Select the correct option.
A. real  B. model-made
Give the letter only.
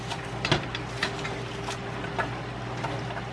A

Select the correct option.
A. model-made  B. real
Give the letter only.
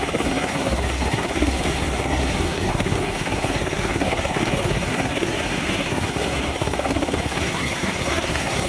A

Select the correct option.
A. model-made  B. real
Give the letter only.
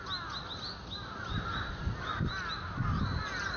B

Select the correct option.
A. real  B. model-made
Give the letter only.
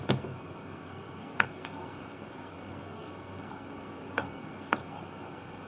B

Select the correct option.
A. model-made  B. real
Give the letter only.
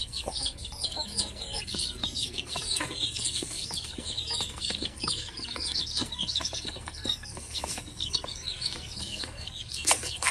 A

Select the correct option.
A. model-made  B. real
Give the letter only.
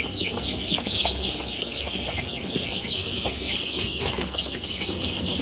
A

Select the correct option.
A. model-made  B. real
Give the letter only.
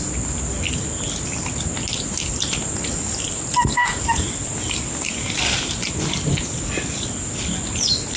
B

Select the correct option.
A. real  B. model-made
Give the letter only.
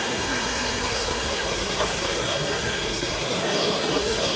B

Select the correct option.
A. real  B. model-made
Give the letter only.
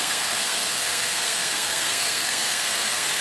B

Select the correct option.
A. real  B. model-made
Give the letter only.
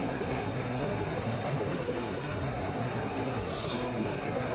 B